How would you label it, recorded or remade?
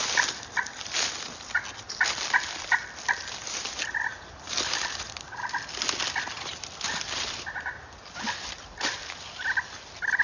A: recorded